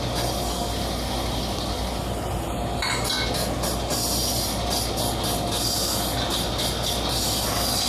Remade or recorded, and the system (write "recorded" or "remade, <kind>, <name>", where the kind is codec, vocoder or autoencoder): recorded